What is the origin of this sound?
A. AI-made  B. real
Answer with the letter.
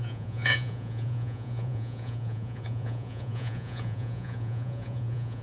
A